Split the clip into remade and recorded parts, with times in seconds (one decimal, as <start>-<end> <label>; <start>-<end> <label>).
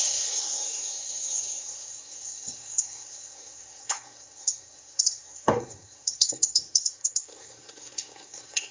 0.0-8.7 remade